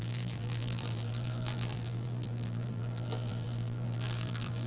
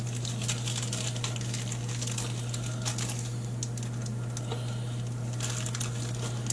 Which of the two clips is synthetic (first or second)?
first